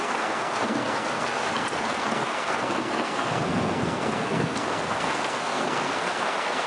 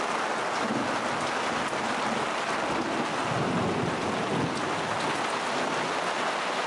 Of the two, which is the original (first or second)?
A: second